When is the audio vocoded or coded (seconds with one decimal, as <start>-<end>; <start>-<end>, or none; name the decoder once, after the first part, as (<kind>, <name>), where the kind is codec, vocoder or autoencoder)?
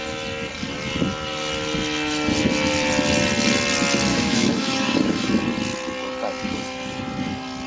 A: 4.1-5.3 (autoencoder, DAC-VAE)